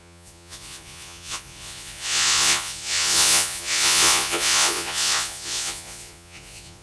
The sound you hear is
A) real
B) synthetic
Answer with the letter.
B